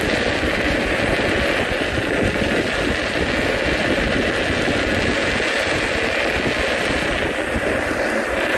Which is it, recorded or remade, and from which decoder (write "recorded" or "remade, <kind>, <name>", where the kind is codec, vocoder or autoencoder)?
recorded